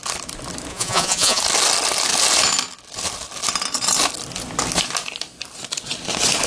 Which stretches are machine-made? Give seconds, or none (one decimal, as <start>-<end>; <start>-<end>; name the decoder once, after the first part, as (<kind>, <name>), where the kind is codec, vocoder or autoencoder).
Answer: 0.7-1.4 (vocoder, Vocos)